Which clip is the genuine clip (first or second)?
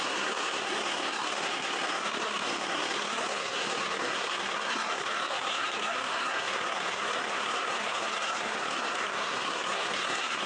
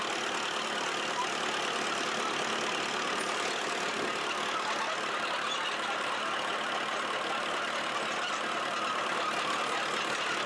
second